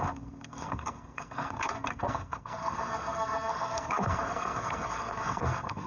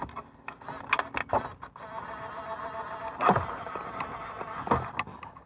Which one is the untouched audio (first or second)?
second